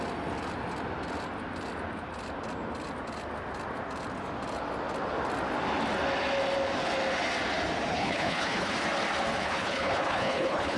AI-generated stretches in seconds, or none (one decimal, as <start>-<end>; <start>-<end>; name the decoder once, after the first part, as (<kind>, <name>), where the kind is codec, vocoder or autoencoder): 7.9-8.7 (codec, HILCodec); 9.4-10.8